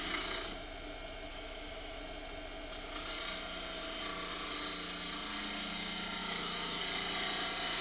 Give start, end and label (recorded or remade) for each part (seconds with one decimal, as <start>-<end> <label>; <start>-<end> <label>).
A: 0.0-1.3 recorded; 1.3-2.0 remade; 2.0-6.2 recorded; 6.2-6.8 remade; 6.8-7.8 recorded